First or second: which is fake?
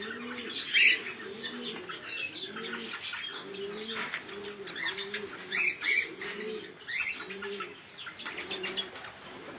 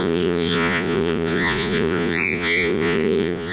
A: second